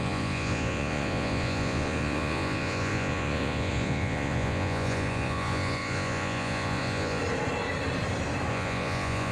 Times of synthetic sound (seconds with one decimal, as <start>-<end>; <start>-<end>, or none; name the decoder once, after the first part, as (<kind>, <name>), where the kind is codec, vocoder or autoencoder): 0.0-7.2 (vocoder, Vocos); 8.5-9.3